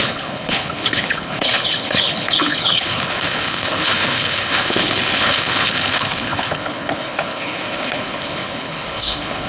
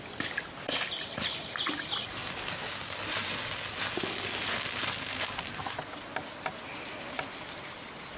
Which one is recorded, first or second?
second